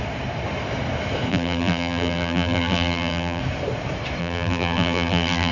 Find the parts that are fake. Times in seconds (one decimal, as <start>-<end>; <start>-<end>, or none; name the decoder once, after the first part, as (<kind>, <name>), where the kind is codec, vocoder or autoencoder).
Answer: 1.3-3.4 (vocoder, BigVGAN v2); 4.2-5.5